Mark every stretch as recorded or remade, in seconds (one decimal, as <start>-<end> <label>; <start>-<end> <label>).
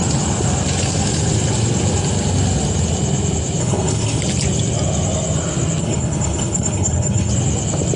0.0-3.6 recorded; 3.6-4.2 remade; 4.2-5.8 recorded; 5.8-7.3 remade; 7.3-8.0 recorded